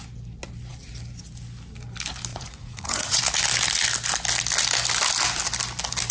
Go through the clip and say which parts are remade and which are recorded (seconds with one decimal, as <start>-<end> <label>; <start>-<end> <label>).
0.0-2.3 recorded; 2.3-3.2 remade; 3.2-6.1 recorded